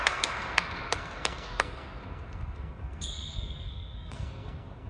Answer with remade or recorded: remade